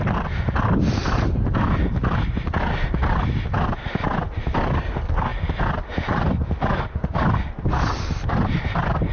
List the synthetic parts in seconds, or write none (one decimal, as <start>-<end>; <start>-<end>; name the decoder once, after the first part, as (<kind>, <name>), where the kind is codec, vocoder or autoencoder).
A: none